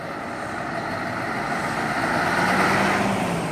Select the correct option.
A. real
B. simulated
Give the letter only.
A